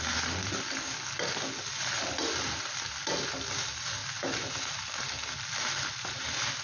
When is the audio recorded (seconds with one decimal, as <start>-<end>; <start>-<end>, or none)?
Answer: 0.0-4.0; 4.5-6.6